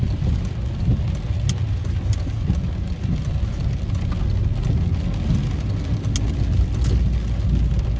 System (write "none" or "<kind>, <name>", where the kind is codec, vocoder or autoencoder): none